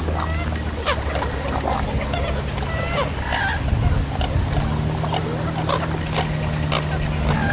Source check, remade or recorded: recorded